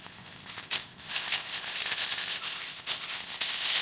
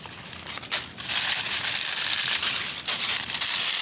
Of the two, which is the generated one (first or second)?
first